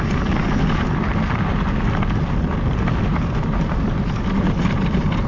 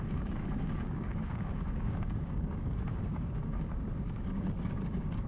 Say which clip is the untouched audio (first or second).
first